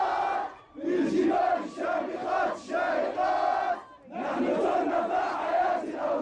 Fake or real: fake